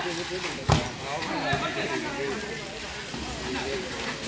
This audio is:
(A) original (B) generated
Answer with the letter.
A